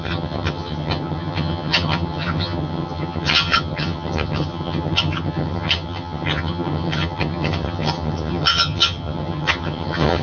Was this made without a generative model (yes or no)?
no